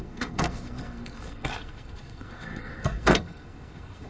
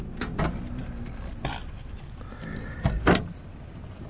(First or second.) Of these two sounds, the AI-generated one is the first